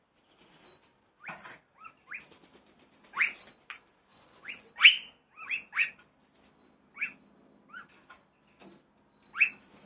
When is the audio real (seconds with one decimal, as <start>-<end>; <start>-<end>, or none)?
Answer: 0.0-4.1; 4.7-9.9